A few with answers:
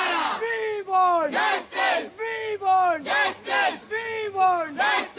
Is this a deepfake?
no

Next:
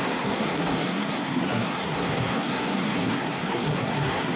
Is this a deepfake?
yes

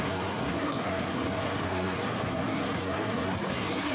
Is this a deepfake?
yes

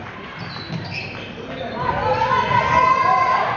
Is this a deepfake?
no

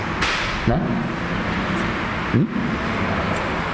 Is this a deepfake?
no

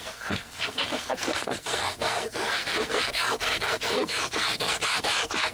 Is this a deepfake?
yes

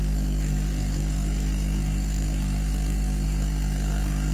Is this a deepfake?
yes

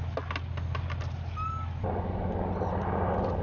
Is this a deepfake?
no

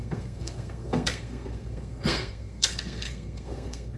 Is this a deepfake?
yes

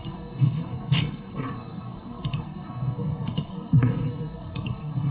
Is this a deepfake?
yes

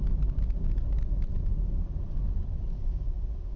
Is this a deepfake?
no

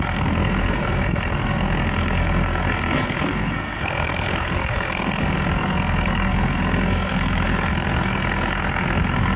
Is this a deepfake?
yes